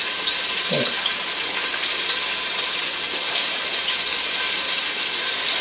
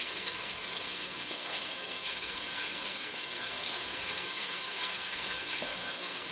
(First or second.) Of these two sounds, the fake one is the second